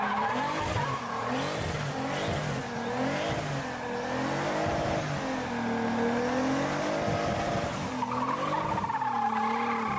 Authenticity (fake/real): real